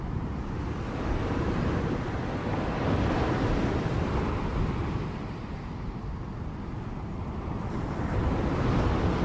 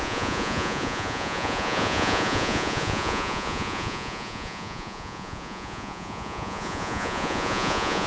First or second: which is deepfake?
second